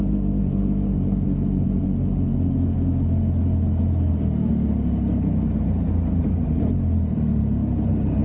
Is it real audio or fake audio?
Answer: real